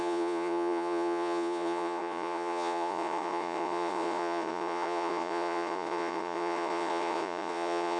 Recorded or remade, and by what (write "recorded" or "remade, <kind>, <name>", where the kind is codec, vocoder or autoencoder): remade, vocoder, Vocos